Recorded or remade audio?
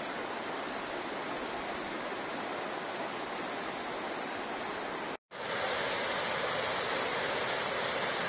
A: recorded